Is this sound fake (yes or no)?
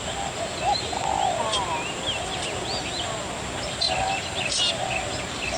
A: no